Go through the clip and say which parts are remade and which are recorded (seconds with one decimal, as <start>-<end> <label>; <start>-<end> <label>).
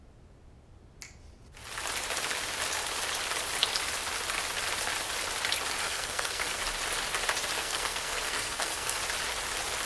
0.0-5.8 recorded; 5.8-6.6 remade; 6.6-7.6 recorded; 7.6-9.0 remade; 9.0-9.9 recorded